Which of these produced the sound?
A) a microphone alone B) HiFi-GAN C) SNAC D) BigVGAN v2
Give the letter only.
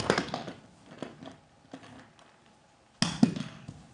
A